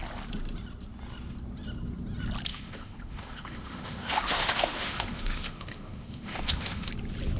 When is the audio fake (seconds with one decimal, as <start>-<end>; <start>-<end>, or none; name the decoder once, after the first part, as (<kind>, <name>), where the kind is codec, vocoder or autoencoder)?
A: 2.5-6.9 (autoencoder, DAC-VAE)